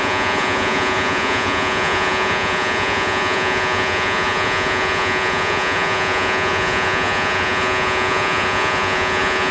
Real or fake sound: fake